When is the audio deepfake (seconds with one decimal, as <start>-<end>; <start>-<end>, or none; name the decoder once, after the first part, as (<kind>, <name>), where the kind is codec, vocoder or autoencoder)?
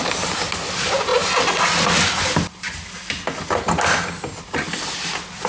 none